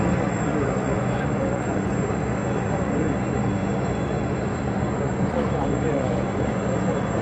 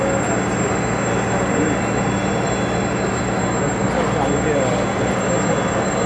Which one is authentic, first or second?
second